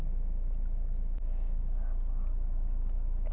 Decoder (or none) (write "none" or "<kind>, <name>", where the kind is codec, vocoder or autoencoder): none